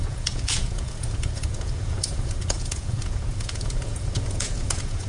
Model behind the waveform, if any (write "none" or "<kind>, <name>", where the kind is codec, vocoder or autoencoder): vocoder, Vocos